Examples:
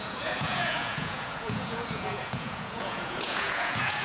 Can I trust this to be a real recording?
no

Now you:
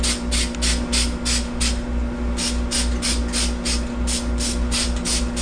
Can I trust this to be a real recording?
yes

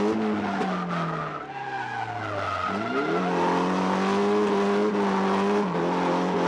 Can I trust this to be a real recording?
yes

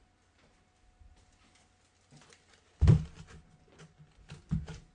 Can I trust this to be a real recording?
yes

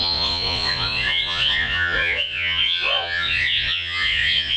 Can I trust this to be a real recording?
no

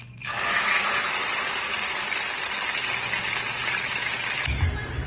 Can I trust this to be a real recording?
yes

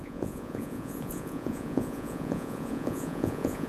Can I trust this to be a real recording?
no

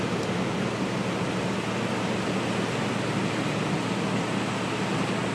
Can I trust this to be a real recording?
yes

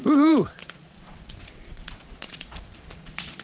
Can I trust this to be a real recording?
no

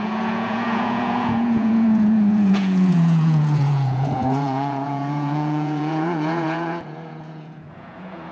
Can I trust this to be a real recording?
no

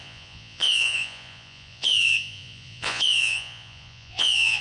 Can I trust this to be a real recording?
no